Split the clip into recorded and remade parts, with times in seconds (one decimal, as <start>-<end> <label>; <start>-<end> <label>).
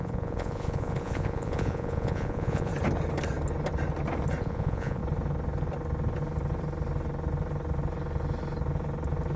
0.0-2.7 remade; 2.7-4.4 recorded; 4.4-5.0 remade; 5.0-9.4 recorded